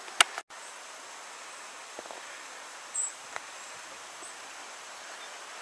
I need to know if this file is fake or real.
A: real